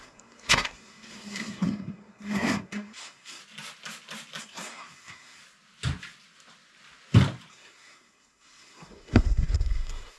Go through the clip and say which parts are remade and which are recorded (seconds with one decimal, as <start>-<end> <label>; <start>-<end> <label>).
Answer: 0.0-3.4 remade; 3.4-4.4 recorded; 4.4-5.4 remade; 5.4-7.5 recorded; 7.5-10.2 remade

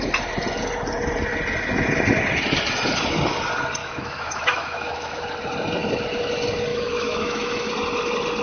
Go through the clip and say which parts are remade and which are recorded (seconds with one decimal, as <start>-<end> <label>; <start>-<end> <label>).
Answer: 0.0-3.8 recorded; 3.8-5.2 remade; 5.2-6.7 recorded; 6.7-7.7 remade; 7.7-8.4 recorded

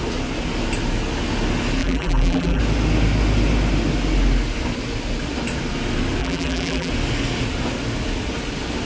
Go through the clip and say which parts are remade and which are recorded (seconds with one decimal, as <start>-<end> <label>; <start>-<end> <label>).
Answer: 0.0-1.8 recorded; 1.8-2.6 remade; 2.6-6.2 recorded; 6.2-6.9 remade; 6.9-8.8 recorded

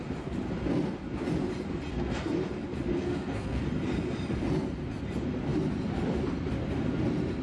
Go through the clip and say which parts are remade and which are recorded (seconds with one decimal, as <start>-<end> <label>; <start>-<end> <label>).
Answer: 0.0-1.9 recorded; 1.9-2.5 remade; 2.5-2.9 recorded; 2.9-3.6 remade; 3.6-7.4 recorded

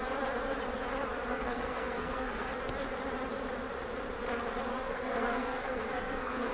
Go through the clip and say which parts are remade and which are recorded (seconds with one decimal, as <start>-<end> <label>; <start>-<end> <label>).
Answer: 0.0-1.3 recorded; 1.3-2.6 remade; 2.6-4.7 recorded; 4.7-6.5 remade

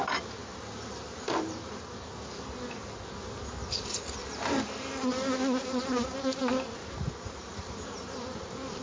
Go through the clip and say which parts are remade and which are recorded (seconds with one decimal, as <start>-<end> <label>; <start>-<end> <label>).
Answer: 0.0-0.4 recorded; 0.4-2.1 remade; 2.1-4.2 recorded; 4.2-4.9 remade; 4.9-6.8 recorded; 6.8-8.8 remade

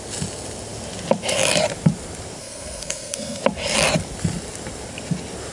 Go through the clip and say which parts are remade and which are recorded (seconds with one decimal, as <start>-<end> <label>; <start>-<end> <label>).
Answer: 0.0-2.4 recorded; 2.4-3.4 remade; 3.4-5.5 recorded

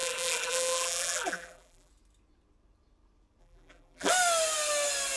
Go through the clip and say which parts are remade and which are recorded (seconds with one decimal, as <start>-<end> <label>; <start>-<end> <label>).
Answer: 0.0-1.9 remade; 1.9-3.4 recorded; 3.4-4.1 remade; 4.1-5.2 recorded